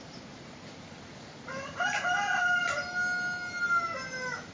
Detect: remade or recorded recorded